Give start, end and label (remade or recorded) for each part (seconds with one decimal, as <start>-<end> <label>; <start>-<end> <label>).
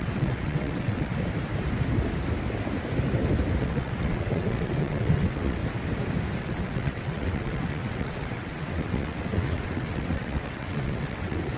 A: 0.0-1.1 remade; 1.1-3.6 recorded; 3.6-5.6 remade; 5.6-6.4 recorded; 6.4-11.6 remade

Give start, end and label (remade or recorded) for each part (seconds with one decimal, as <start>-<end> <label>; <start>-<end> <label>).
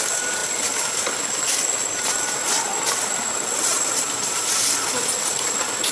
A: 0.0-5.9 recorded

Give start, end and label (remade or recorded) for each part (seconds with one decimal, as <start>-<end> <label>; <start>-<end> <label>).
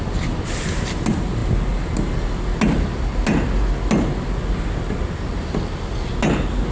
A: 0.0-6.7 recorded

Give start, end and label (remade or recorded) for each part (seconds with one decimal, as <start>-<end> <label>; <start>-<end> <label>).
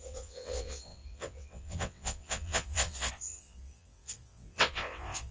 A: 0.0-5.3 remade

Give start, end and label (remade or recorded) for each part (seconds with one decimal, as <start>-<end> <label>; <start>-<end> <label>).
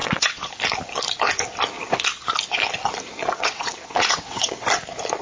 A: 0.0-0.5 remade; 0.5-3.2 recorded; 3.2-4.7 remade; 4.7-5.2 recorded